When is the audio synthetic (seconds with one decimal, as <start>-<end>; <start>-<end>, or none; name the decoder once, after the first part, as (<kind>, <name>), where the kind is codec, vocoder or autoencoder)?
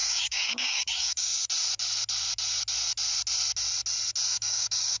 0.0-1.3 (codec, DAC); 4.3-5.0